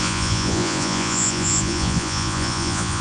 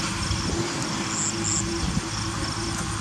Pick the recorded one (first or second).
second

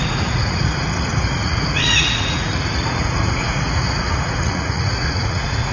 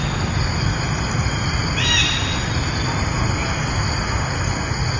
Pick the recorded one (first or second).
second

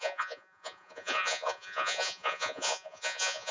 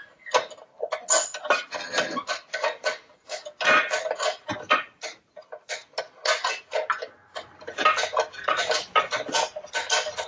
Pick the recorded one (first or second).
second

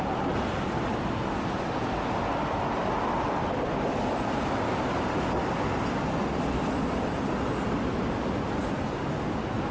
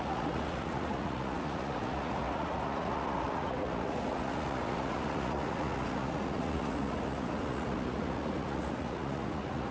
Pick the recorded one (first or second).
first